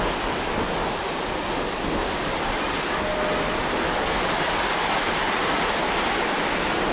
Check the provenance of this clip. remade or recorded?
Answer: recorded